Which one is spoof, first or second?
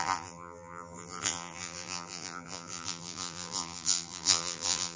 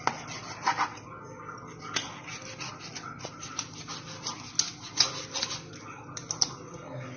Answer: first